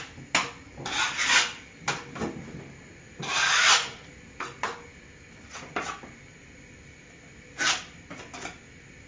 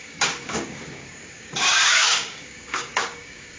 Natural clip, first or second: first